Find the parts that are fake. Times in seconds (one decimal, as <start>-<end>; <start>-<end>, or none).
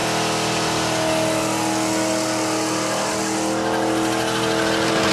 none